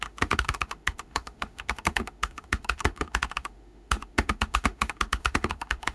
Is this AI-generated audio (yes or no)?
yes